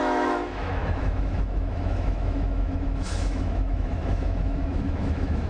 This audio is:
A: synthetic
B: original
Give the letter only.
A